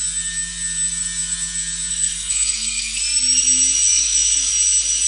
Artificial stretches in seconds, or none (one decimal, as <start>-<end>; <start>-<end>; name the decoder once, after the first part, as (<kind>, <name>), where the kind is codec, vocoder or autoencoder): 1.9-3.0 (codec, SNAC); 3.9-4.5